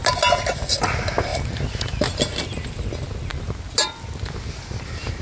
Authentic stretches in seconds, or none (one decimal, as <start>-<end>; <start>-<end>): 0.0-5.2